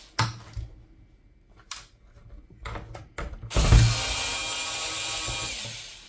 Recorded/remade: recorded